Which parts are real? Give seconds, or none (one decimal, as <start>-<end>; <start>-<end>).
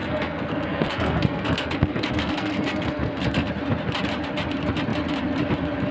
3.5-5.9